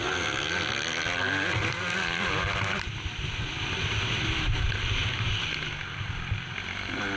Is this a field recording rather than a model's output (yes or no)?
yes